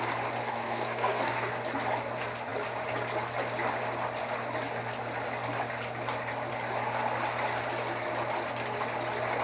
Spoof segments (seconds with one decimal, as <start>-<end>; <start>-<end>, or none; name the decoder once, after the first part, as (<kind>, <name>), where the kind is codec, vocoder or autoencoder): 0.4-1.5 (codec, SNAC)